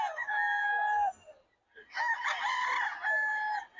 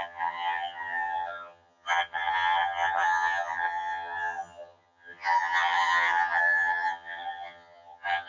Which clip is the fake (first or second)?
second